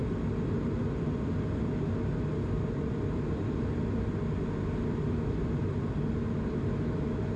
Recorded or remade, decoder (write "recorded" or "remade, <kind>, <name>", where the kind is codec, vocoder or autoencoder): recorded